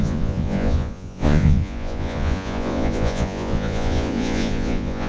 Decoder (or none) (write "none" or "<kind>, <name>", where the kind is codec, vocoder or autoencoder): vocoder, Vocos